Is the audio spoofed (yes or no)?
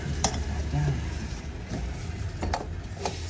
no